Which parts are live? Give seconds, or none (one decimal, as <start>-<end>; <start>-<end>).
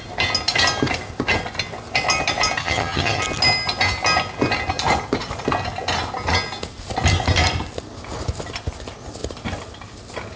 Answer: 0.0-2.6; 3.2-10.4